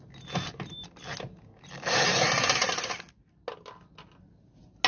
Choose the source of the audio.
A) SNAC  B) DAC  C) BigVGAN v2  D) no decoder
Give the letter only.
D